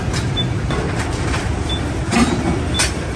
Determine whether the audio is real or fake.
real